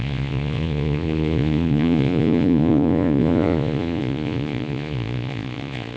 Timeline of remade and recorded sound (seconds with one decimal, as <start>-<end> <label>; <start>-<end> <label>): 0.0-6.0 remade